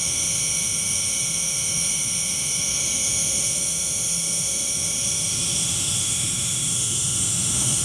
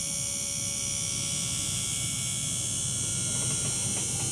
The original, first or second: second